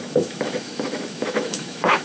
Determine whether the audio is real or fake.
fake